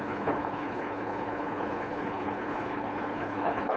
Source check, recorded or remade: remade